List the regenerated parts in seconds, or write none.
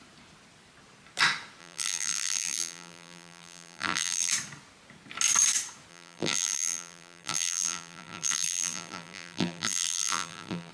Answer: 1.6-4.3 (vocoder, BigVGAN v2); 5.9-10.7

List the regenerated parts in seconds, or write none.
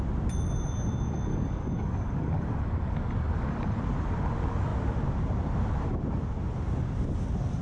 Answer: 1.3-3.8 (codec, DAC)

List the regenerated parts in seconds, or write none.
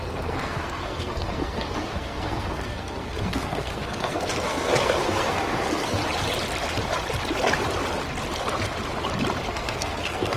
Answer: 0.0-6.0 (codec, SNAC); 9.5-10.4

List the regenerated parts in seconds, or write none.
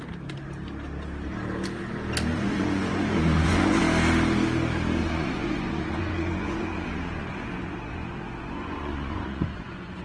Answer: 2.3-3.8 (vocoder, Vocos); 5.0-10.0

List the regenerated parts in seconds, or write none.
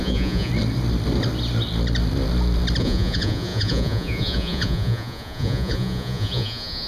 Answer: 0.0-0.5 (vocoder, Vocos); 2.8-6.9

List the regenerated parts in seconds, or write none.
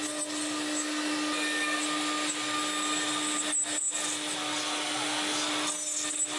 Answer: none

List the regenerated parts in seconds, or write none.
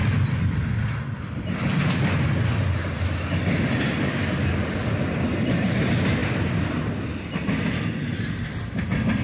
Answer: none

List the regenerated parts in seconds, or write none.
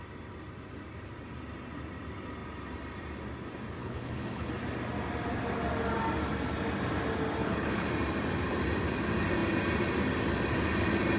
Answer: 3.8-4.5 (codec, HILCodec); 7.4-7.9